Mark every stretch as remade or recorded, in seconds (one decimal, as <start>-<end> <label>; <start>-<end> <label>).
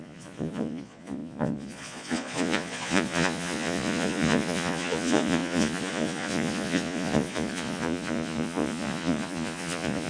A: 0.0-10.1 remade